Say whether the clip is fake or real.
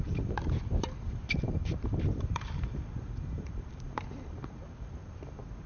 fake